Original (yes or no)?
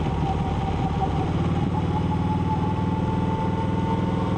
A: yes